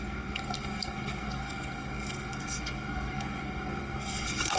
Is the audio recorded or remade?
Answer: remade